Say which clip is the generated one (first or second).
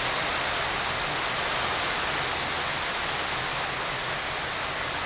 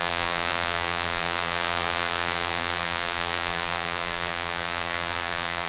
second